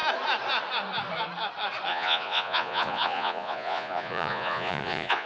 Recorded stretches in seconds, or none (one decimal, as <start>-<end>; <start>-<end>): 0.0-1.9